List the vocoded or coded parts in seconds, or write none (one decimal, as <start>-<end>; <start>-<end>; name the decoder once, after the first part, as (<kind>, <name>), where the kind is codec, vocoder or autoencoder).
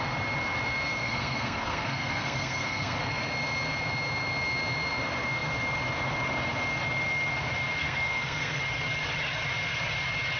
1.0-3.0 (codec, SNAC); 7.8-8.6